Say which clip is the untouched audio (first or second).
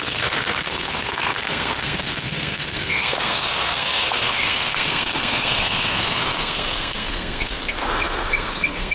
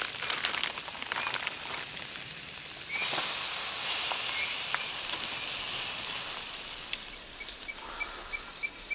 second